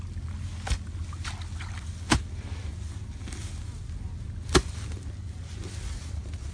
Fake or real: real